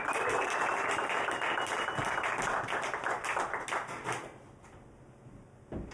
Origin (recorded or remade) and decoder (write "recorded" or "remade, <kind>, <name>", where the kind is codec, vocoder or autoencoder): recorded